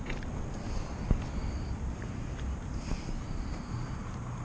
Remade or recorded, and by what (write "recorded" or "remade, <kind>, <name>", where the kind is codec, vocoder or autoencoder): remade, vocoder, BigVGAN v2